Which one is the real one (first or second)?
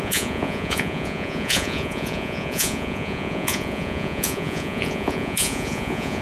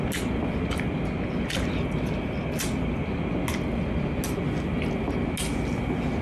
second